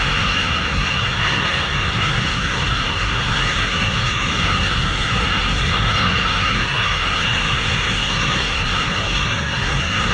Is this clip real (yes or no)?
no